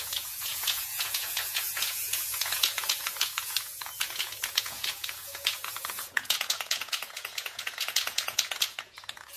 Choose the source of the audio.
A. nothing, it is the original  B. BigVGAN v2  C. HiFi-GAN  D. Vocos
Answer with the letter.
D